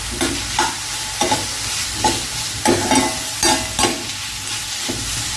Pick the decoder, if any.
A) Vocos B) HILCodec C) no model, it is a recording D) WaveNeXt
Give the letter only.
C